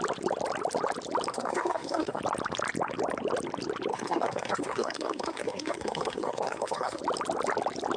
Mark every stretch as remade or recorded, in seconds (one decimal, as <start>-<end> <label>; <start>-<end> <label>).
0.0-1.3 recorded; 1.3-2.2 remade; 2.2-3.9 recorded; 3.9-7.0 remade; 7.0-8.0 recorded